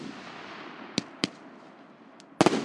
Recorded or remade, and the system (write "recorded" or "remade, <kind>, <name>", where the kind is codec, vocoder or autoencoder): recorded